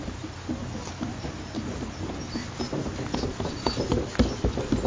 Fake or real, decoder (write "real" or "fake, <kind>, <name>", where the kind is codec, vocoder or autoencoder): real